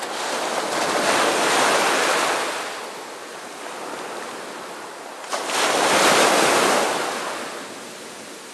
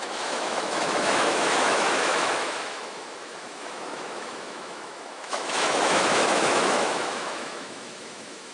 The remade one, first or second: second